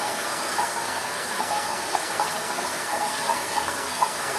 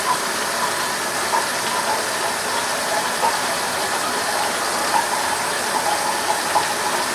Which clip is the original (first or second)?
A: second